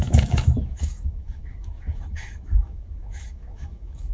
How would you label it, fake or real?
fake